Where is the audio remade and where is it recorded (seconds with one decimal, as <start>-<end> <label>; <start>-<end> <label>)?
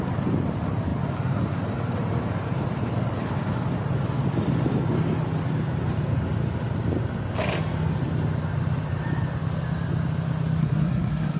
0.0-10.6 recorded; 10.6-11.4 remade